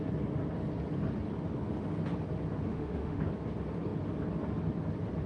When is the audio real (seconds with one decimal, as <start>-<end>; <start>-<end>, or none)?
0.0-2.7; 3.2-5.3